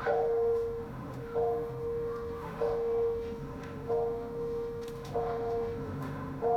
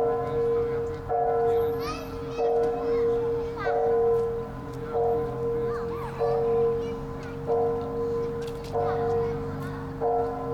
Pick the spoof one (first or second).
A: first